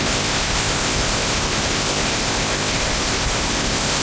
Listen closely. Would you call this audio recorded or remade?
remade